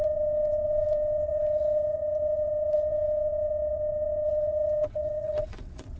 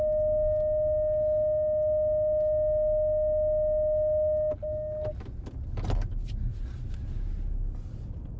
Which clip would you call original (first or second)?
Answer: second